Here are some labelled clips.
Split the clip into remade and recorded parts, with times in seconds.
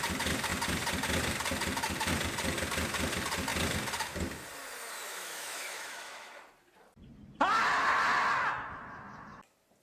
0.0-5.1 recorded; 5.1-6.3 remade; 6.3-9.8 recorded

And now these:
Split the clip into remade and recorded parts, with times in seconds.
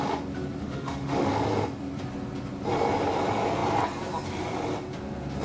0.0-0.6 recorded; 0.6-1.3 remade; 1.3-5.4 recorded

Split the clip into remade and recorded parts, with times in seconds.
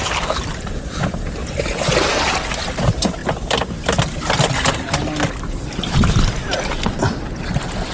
0.0-2.1 remade; 2.1-6.4 recorded; 6.4-7.3 remade; 7.3-7.9 recorded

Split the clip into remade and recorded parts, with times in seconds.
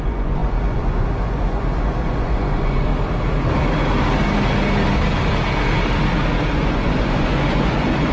0.0-2.9 remade; 2.9-6.5 recorded; 6.5-8.1 remade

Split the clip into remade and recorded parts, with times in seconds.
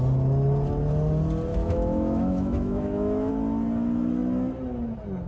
0.0-1.5 recorded; 1.5-3.3 remade; 3.3-5.3 recorded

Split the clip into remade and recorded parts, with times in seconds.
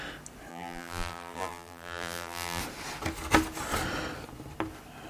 0.0-0.5 recorded; 0.5-2.6 remade; 2.6-5.1 recorded